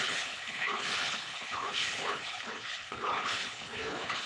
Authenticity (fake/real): fake